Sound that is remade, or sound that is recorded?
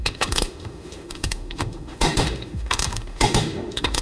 remade